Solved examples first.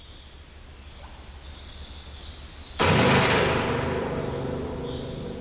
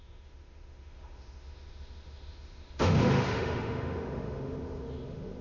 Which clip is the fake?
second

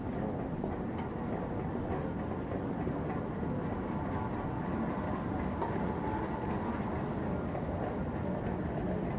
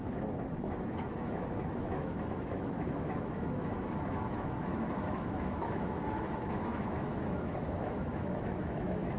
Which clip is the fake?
second